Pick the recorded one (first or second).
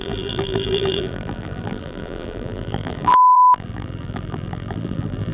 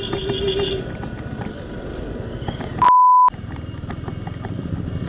second